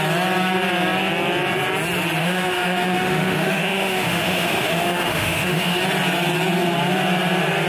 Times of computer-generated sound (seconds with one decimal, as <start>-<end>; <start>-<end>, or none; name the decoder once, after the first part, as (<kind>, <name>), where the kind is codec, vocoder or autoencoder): 2.2-5.8 (autoencoder, DAC-VAE)